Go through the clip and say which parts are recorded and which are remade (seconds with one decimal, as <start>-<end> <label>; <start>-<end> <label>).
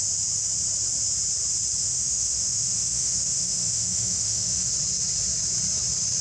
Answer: 0.0-1.8 recorded; 1.8-4.7 remade; 4.7-6.2 recorded